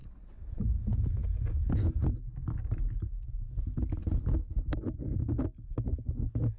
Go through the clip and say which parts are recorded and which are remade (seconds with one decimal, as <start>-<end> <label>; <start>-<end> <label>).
0.0-0.6 remade; 0.6-6.6 recorded